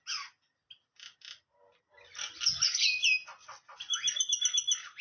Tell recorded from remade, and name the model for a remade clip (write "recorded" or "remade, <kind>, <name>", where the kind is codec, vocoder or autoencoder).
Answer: recorded